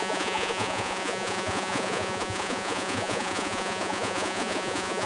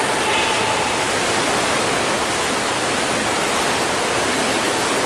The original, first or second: second